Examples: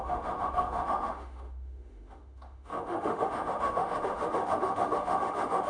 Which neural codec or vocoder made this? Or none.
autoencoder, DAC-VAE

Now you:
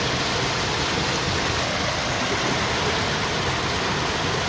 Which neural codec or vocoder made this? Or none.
none